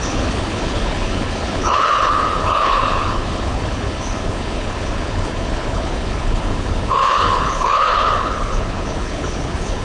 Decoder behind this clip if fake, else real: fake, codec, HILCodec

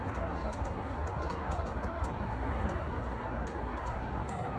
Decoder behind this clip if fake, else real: fake, codec, SNAC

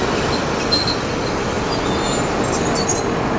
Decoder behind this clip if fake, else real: real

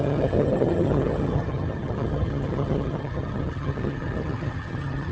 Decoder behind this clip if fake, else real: fake, vocoder, HiFi-GAN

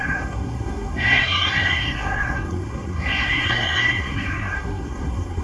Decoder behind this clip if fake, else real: fake, codec, SNAC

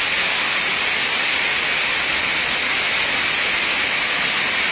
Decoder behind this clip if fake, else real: real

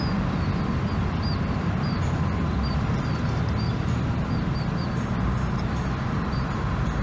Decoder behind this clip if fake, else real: real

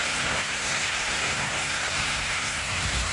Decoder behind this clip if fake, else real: fake, codec, SNAC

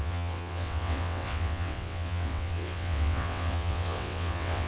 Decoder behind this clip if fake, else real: fake, vocoder, WaveNeXt